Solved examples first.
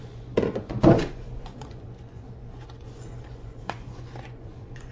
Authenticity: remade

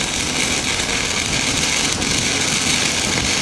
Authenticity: recorded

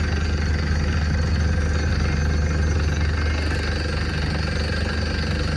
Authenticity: recorded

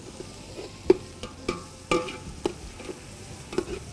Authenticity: recorded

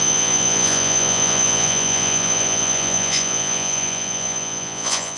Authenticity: remade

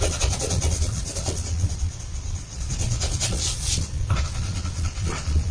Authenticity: remade